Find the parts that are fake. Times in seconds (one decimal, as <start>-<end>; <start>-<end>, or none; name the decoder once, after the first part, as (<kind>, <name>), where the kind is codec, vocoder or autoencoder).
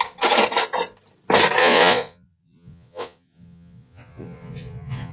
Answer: 1.6-5.1 (vocoder, Vocos)